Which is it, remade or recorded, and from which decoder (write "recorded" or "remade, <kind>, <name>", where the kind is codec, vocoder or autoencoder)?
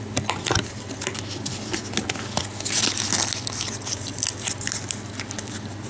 recorded